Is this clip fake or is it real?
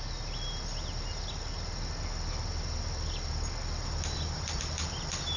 real